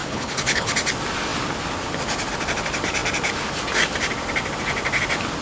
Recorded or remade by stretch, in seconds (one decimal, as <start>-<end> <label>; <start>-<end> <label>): 0.0-0.7 remade; 0.7-5.4 recorded